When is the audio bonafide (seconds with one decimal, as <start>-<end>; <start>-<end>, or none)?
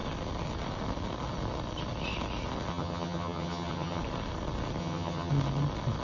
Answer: 0.0-2.7; 4.0-4.8; 5.3-6.0